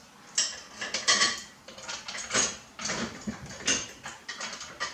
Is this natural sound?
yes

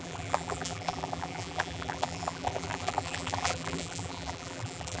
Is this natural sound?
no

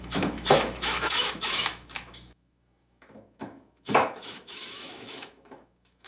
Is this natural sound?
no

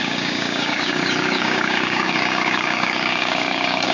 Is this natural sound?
no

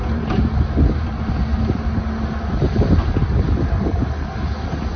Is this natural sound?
yes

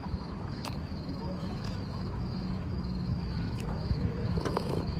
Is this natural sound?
no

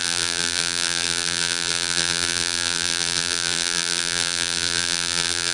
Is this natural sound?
no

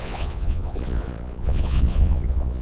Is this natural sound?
no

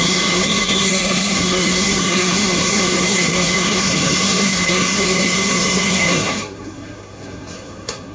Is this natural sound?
no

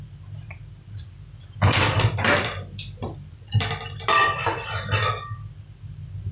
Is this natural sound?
yes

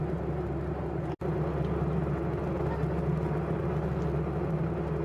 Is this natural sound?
yes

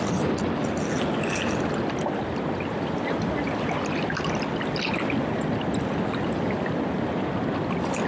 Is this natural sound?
yes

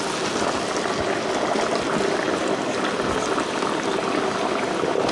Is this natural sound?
yes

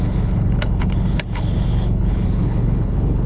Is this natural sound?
no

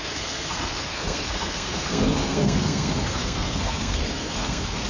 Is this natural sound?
no